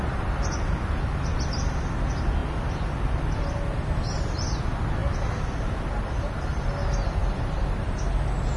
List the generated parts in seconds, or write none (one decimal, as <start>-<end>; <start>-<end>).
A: 1.3-1.9; 7.2-7.9